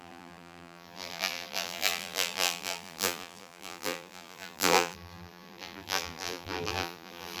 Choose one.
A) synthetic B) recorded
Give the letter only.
A